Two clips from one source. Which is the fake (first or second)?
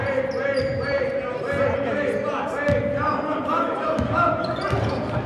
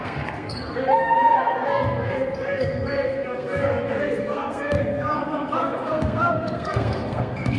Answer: second